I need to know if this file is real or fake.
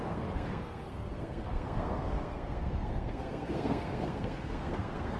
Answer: fake